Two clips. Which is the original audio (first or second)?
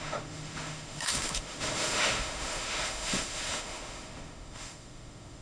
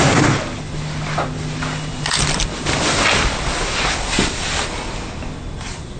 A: second